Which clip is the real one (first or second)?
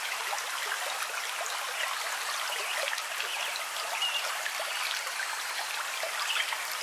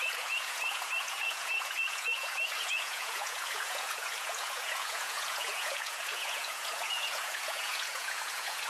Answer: first